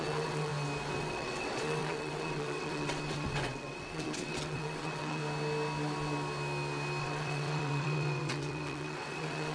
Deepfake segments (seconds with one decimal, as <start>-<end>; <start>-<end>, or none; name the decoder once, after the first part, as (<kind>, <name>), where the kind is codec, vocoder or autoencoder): 0.0-0.5 (vocoder, WaveNeXt); 1.0-5.2; 7.0-9.5